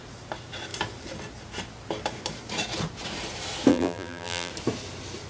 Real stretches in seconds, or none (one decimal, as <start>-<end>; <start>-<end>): 0.0-3.7; 4.5-5.3